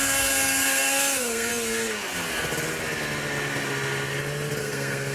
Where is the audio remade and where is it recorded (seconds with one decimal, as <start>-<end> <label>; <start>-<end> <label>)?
0.0-1.5 remade; 1.5-4.6 recorded; 4.6-5.1 remade